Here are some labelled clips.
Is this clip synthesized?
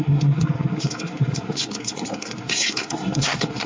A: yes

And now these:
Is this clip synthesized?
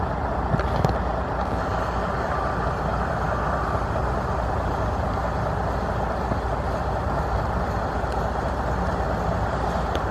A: no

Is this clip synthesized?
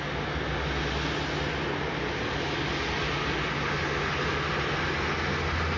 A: no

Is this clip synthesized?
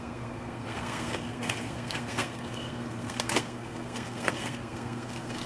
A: yes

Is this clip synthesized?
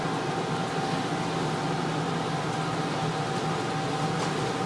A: no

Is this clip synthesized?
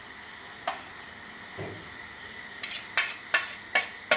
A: no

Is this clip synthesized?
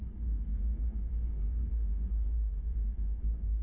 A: yes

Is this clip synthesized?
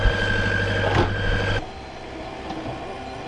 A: no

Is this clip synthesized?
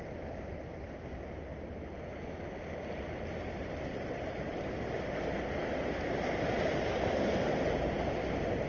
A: no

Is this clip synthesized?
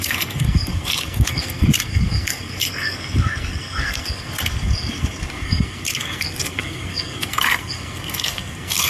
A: yes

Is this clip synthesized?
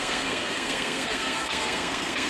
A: yes